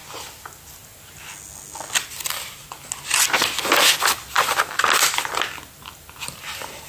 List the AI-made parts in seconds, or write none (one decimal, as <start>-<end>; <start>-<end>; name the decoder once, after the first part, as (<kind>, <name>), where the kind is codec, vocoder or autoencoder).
none